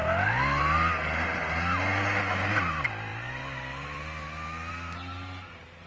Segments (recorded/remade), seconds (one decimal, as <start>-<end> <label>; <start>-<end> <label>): 0.0-5.9 recorded